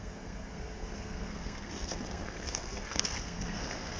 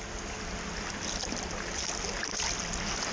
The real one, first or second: second